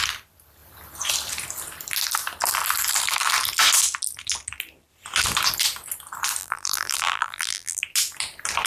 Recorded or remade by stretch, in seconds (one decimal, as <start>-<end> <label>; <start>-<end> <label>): 0.0-6.4 recorded; 6.4-7.8 remade; 7.8-8.7 recorded